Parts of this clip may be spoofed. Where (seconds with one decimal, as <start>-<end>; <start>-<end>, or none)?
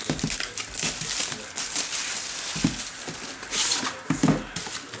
none